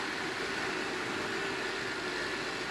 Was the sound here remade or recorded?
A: recorded